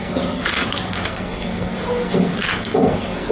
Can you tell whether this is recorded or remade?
remade